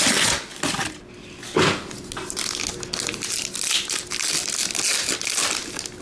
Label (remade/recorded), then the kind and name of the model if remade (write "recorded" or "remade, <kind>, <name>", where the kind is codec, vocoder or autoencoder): recorded